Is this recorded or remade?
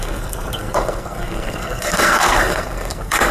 remade